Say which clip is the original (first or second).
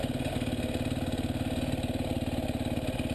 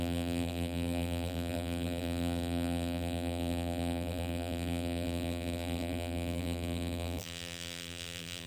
first